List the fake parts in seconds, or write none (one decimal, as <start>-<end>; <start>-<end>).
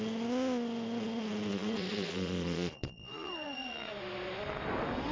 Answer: 1.5-3.9